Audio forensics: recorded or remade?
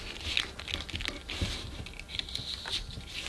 recorded